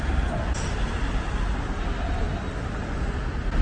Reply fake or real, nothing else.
real